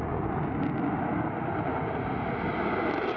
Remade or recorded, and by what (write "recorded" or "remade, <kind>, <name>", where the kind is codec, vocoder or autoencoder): recorded